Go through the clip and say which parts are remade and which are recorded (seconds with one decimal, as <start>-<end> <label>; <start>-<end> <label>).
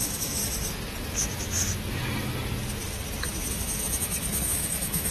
0.0-0.4 remade; 0.4-3.5 recorded; 3.5-5.1 remade